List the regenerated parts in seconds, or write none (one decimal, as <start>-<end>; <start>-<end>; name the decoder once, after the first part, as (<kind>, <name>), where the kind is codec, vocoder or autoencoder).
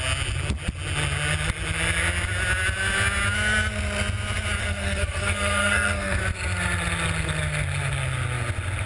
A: 4.6-6.2 (codec, SNAC)